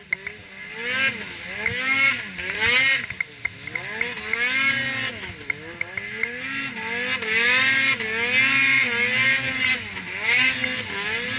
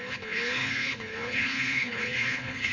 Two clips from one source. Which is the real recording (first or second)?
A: first